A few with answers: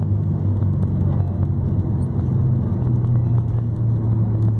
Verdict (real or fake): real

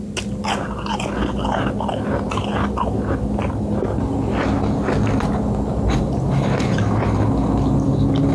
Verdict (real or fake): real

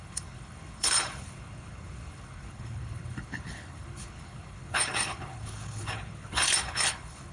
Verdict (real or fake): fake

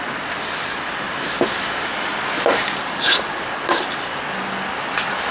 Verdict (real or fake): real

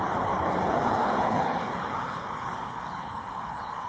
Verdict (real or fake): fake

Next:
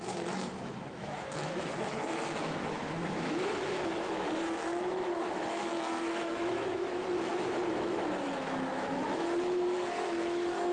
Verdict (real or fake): fake